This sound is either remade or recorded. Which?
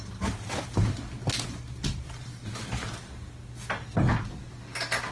recorded